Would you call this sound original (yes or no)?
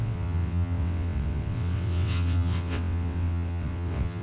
no